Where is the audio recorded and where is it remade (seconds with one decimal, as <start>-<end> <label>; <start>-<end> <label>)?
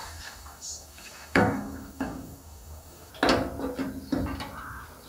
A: 0.0-3.1 remade; 3.1-5.1 recorded